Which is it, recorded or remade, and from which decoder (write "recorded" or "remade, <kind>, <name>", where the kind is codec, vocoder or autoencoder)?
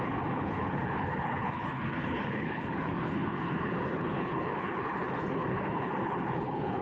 remade, codec, HILCodec